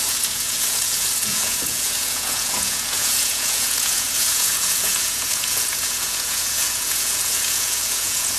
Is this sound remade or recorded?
remade